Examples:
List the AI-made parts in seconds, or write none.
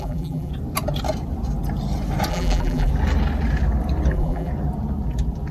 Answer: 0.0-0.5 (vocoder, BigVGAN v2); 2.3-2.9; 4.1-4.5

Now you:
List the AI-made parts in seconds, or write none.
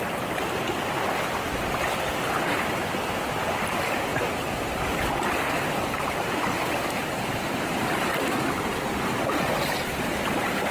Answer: 4.1-6.0 (vocoder, BigVGAN v2); 7.0-8.2